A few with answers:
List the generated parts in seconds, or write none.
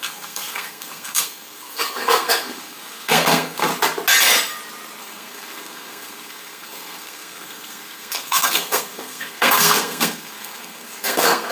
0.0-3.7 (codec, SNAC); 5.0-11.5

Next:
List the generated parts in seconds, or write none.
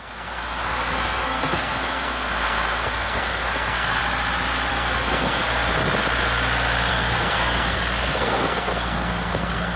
0.0-4.0 (codec, SNAC); 4.7-5.4; 6.9-9.8